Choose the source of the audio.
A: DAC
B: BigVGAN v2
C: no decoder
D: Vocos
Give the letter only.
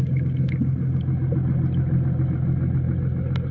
C